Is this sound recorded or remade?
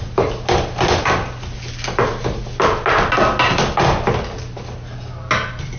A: recorded